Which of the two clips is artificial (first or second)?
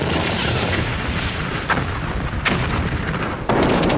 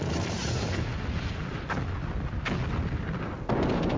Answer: first